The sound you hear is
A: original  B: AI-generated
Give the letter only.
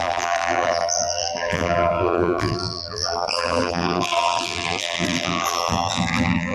B